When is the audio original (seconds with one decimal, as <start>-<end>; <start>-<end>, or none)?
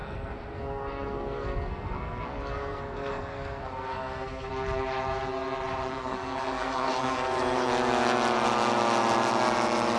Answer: 4.5-5.9; 7.7-10.0